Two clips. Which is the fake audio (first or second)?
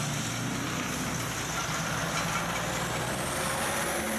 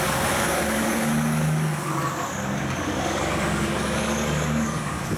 second